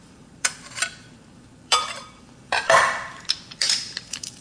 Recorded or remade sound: remade